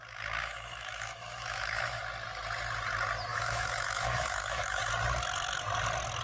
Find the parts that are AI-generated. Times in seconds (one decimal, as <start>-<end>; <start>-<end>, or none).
0.4-2.0; 3.3-4.9